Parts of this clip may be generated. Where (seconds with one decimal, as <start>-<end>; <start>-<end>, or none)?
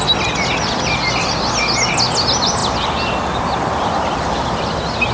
none